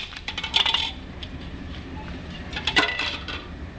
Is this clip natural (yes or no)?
no